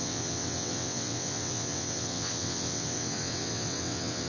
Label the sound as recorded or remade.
remade